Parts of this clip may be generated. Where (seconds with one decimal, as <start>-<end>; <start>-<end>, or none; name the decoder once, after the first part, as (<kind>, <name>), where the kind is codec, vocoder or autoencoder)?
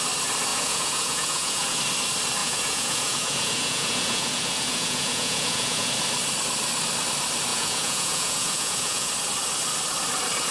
0.5-1.8 (vocoder, Vocos); 2.4-5.9; 7.5-9.1